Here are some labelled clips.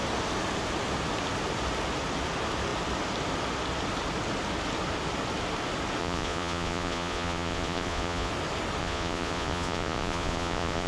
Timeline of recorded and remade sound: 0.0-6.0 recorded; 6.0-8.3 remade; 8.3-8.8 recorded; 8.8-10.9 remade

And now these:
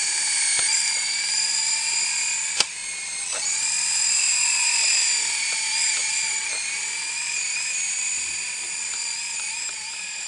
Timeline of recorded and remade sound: 0.0-10.3 recorded

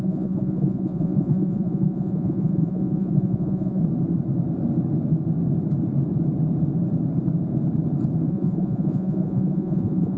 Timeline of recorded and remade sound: 0.0-3.8 remade; 3.8-8.3 recorded; 8.3-10.2 remade

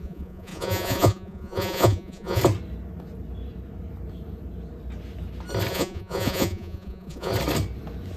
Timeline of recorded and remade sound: 0.0-2.4 remade; 2.4-5.7 recorded; 5.7-7.3 remade; 7.3-8.2 recorded

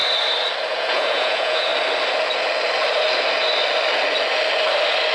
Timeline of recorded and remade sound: 0.0-0.7 recorded; 0.7-1.7 remade; 1.7-5.1 recorded

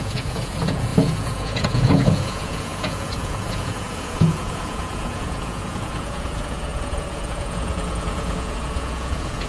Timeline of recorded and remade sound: 0.0-9.5 remade

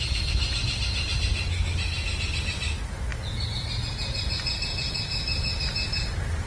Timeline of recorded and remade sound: 0.0-6.5 recorded